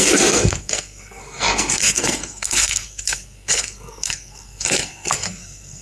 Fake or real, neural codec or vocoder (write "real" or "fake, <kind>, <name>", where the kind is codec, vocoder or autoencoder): fake, codec, SNAC